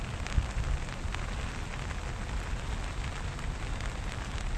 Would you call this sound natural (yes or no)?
yes